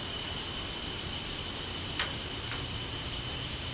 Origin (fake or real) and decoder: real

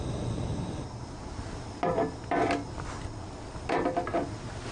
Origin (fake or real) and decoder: real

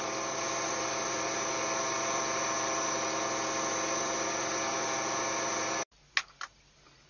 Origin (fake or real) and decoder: real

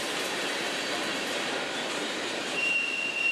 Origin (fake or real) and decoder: fake, vocoder, BigVGAN v2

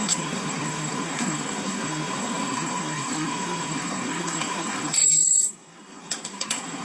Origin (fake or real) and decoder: fake, codec, SNAC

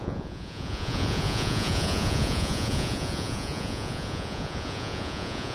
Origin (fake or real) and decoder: fake, vocoder, Vocos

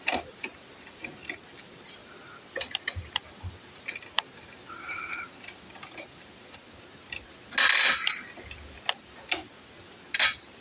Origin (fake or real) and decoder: real